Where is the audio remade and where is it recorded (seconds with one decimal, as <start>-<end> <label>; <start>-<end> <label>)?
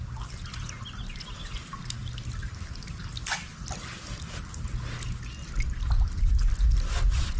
0.0-7.4 recorded